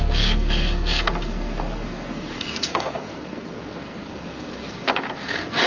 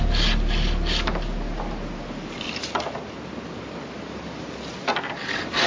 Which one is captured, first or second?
second